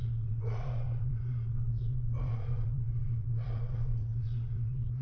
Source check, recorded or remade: remade